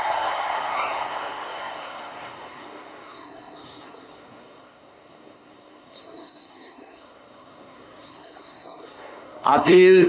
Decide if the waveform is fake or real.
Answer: fake